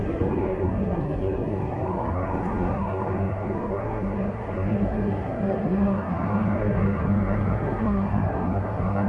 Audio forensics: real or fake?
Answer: fake